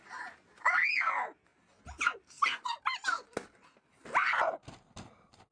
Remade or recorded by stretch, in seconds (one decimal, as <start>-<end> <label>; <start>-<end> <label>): 0.0-1.5 recorded; 1.5-2.2 remade; 2.2-5.5 recorded